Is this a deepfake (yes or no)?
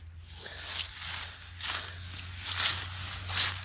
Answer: no